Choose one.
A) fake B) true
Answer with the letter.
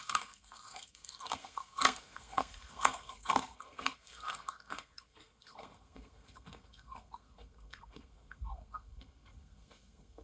A